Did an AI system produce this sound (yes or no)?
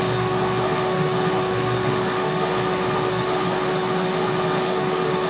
yes